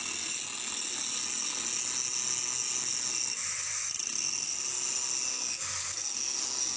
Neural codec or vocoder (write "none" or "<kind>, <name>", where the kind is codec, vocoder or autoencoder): none